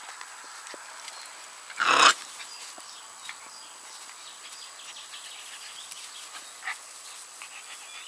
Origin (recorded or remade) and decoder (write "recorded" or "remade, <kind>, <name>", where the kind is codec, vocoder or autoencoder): recorded